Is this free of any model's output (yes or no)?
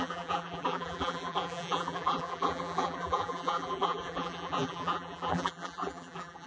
no